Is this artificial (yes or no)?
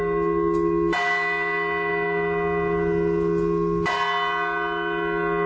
no